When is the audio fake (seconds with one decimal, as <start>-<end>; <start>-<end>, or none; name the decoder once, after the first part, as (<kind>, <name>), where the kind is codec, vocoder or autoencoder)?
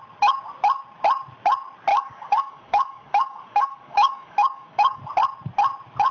1.9-5.0 (codec, DAC)